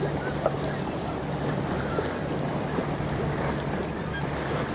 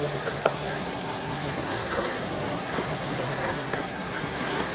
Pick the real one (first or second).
first